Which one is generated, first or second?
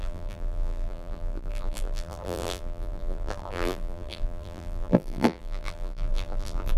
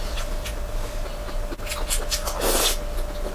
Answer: first